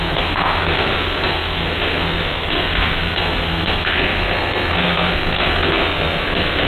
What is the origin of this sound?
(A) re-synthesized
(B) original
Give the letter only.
A